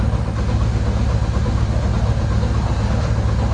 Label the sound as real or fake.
real